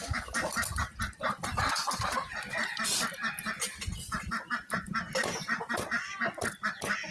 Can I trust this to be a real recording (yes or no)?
yes